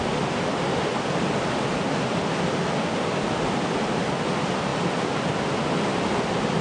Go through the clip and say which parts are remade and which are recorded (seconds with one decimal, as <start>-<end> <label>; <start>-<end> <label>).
0.0-6.6 recorded